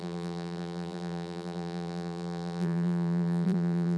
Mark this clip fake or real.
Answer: fake